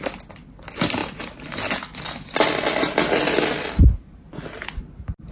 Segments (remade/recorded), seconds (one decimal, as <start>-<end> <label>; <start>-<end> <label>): 0.0-5.3 recorded